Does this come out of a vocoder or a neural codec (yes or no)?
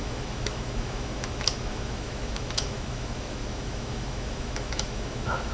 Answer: yes